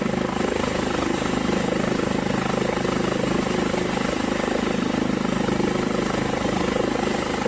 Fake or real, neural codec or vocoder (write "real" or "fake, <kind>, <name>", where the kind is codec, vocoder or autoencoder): real